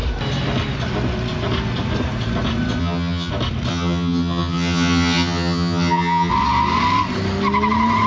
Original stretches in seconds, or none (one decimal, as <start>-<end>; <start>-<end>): 0.0-2.8; 3.3-3.7; 6.3-8.1